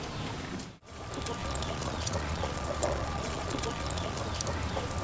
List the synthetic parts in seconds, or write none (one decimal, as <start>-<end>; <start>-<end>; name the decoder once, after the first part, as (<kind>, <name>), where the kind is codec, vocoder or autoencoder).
1.4-4.2 (vocoder, Vocos)